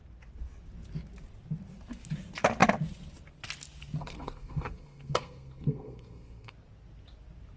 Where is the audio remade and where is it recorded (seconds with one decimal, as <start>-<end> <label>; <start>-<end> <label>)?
0.0-4.0 recorded; 4.0-6.5 remade; 6.5-7.6 recorded